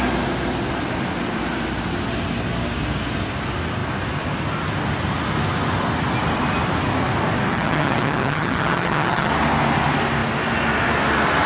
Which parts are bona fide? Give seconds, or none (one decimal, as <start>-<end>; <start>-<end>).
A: 0.0-7.5; 9.3-11.5